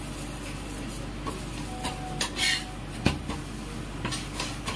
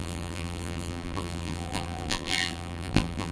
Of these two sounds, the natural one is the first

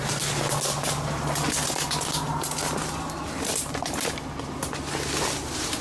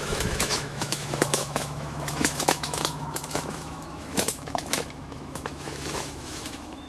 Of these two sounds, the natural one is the first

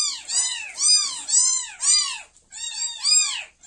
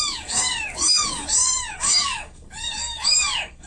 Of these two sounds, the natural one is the first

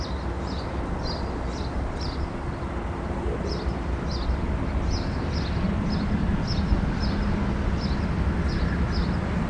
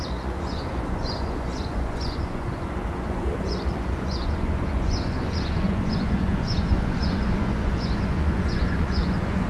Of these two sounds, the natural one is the first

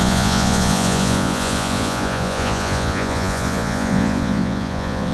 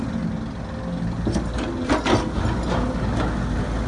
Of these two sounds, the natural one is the second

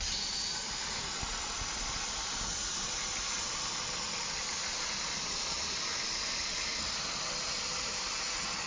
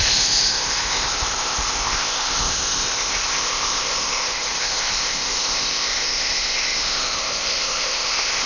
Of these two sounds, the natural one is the first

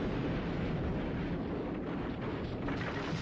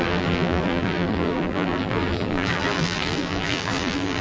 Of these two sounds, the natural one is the first